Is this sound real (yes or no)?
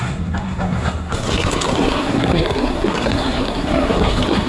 no